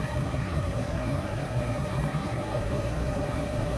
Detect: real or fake fake